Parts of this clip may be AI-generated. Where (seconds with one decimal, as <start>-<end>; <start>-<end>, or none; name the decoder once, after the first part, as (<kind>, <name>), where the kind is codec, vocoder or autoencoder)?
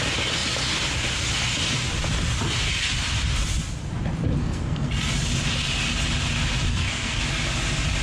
4.4-4.9 (codec, SNAC); 6.7-7.2